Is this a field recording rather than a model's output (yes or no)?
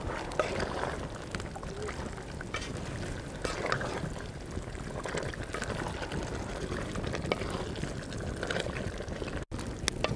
yes